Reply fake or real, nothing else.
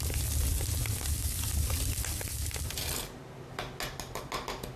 real